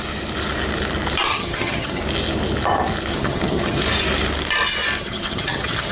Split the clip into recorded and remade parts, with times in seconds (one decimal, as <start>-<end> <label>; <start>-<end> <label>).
0.0-1.3 recorded; 1.3-2.0 remade; 2.0-3.1 recorded; 3.1-3.8 remade; 3.8-5.0 recorded; 5.0-5.9 remade